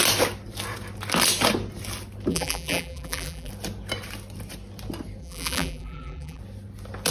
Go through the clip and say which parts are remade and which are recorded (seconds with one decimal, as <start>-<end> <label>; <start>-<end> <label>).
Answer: 0.0-2.3 recorded; 2.3-3.5 remade; 3.5-5.2 recorded; 5.2-6.4 remade; 6.4-7.1 recorded